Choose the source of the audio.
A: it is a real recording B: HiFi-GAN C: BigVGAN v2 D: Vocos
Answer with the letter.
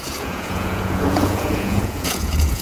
D